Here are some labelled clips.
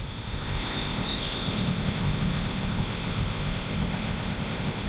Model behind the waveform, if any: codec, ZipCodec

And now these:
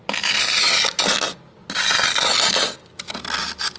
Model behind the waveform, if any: none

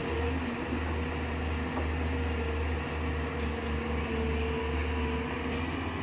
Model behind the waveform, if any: none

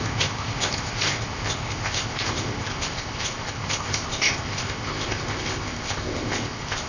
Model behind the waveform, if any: codec, ZipCodec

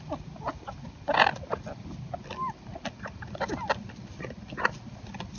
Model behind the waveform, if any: none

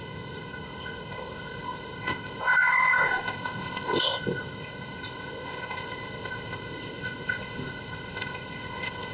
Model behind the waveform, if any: codec, ZipCodec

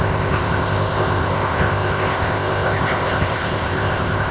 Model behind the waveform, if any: codec, ZipCodec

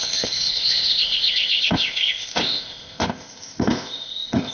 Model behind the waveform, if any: codec, ZipCodec